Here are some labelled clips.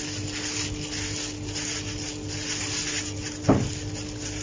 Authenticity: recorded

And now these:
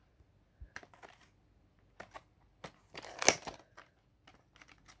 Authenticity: recorded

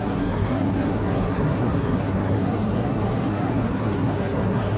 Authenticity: remade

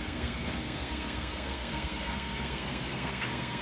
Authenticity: remade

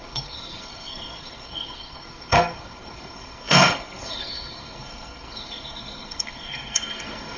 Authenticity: remade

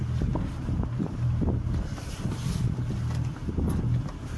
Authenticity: recorded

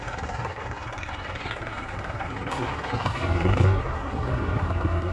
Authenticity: remade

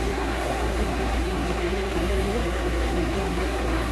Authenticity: remade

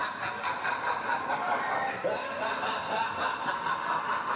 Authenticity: recorded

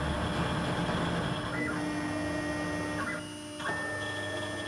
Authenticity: recorded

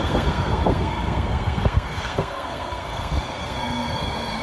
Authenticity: remade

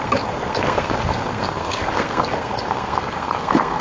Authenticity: remade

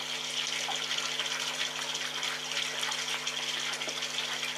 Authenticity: recorded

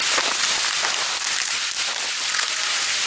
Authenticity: recorded